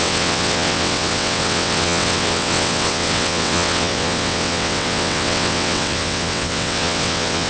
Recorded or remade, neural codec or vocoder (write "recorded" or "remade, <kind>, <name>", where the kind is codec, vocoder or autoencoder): remade, vocoder, WaveNeXt